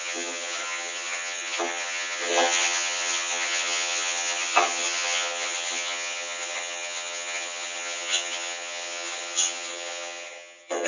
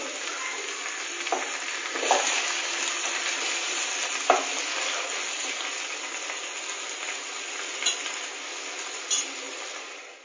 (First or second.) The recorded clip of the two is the second